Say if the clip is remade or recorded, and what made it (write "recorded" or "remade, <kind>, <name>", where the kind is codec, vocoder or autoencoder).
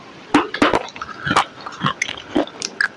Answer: recorded